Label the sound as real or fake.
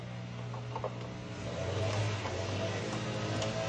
real